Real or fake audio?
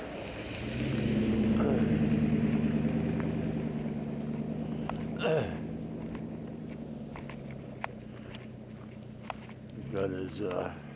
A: real